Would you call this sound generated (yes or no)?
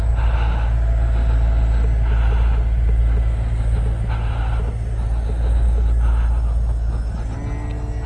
no